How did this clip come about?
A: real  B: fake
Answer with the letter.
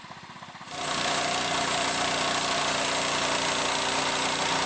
A